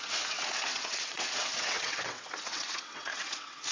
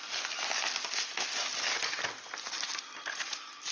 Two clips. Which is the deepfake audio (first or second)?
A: first